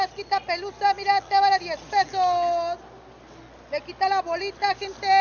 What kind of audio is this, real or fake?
real